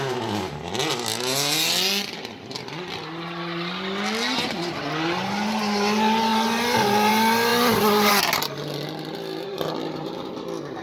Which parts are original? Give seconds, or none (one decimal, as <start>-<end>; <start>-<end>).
0.0-9.8; 10.3-10.8